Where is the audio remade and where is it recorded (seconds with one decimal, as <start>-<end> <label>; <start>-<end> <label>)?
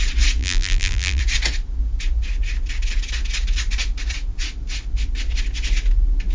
0.0-0.4 recorded; 0.4-1.2 remade; 1.2-6.3 recorded